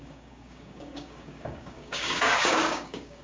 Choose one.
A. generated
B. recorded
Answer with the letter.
A